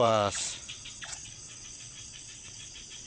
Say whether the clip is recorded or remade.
remade